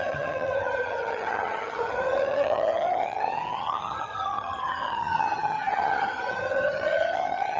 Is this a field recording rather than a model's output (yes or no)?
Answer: no